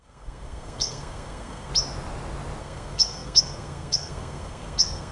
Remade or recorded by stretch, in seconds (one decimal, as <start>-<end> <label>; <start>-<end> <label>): 0.0-1.7 remade; 1.7-2.6 recorded; 2.6-5.1 remade